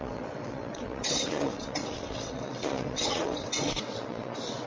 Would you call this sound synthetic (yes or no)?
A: yes